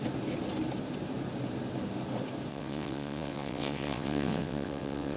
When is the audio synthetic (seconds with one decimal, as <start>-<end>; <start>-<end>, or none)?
2.5-5.2